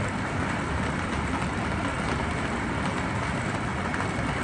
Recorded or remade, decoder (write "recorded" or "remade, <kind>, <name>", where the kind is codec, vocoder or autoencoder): recorded